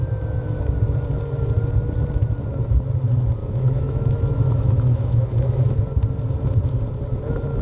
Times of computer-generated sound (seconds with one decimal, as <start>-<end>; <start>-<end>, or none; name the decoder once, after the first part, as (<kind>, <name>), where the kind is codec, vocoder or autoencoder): 3.4-5.6 (autoencoder, DAC-VAE)

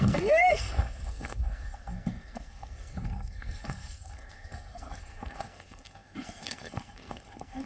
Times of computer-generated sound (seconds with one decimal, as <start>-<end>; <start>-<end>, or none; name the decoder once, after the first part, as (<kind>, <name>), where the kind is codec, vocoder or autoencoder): 0.0-7.7 (codec, SNAC)

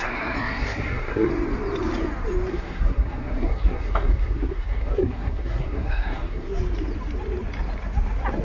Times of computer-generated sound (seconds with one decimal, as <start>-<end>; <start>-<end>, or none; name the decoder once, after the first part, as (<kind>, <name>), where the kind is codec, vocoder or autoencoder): 0.0-1.3 (codec, SNAC); 2.5-6.5

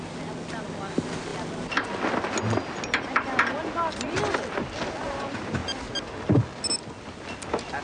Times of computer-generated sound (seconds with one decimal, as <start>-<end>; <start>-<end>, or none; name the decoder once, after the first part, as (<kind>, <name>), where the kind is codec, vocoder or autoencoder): none